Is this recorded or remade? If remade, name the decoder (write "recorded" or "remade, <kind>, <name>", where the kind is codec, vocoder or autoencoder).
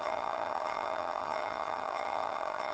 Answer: remade, vocoder, HiFi-GAN